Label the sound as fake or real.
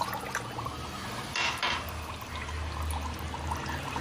real